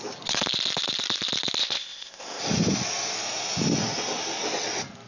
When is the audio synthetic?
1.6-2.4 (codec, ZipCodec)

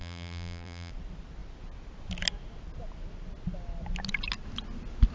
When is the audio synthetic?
0.0-0.9 (vocoder, BigVGAN v2)

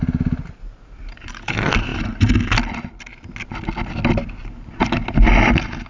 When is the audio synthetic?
none

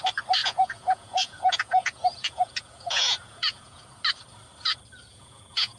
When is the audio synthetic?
0.4-3.9 (vocoder, Vocos); 5.1-5.8

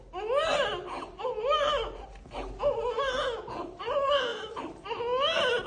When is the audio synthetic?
none

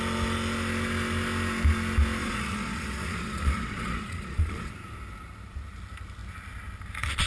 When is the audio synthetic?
2.2-4.7 (vocoder, Vocos)